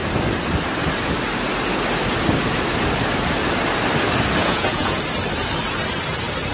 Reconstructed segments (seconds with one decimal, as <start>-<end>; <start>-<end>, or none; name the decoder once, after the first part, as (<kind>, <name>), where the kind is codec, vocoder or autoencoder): 4.4-5.0 (vocoder, Vocos)